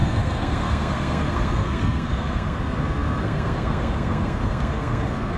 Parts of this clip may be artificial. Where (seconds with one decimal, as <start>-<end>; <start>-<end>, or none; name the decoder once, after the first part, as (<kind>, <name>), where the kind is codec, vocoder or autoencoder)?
0.0-5.4 (codec, SNAC)